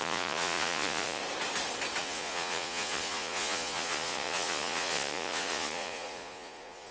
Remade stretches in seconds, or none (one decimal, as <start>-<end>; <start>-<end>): 0.0-1.2; 2.0-6.9